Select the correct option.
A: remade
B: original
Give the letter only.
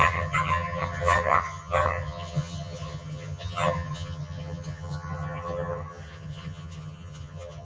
A